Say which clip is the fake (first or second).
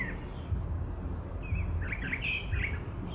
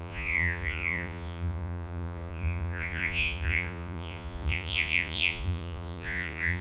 second